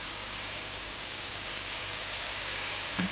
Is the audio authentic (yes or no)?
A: no